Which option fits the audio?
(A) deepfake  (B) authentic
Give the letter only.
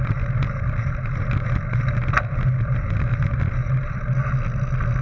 B